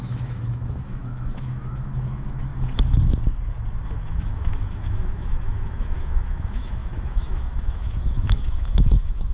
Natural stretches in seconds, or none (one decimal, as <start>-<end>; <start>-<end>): 2.5-3.9

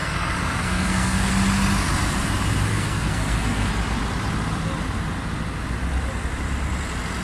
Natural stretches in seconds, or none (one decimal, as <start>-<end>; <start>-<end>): 1.3-2.7; 3.7-7.2

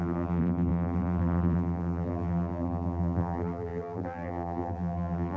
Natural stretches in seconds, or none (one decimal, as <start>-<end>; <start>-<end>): none

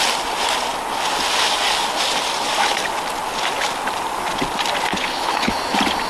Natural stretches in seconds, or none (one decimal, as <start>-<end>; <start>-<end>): 0.0-4.9; 5.5-6.1

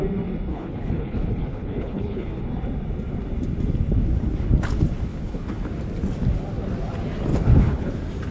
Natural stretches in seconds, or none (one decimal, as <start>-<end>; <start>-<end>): 0.0-0.5; 2.4-5.1; 5.6-7.3; 7.9-8.3

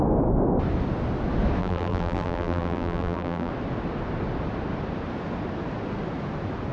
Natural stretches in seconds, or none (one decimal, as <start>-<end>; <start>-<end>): 0.0-1.6; 3.5-6.7